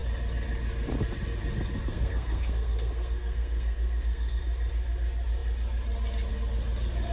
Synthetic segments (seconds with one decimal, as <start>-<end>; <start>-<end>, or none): 1.9-4.4